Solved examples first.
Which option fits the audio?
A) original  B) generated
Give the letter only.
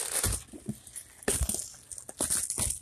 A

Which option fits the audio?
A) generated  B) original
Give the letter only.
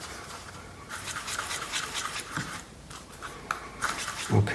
A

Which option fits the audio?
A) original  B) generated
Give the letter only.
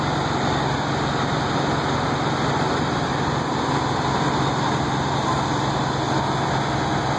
A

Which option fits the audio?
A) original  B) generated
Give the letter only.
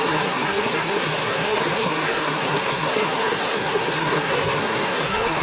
B